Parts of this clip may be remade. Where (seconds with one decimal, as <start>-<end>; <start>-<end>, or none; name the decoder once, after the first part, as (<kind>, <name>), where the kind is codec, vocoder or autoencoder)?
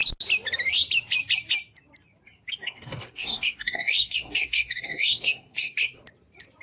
2.6-6.0 (codec, SNAC)